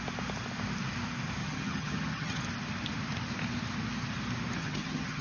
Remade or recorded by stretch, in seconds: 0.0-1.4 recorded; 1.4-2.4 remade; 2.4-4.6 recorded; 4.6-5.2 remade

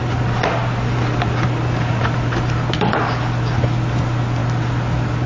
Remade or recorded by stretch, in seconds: 0.0-5.3 recorded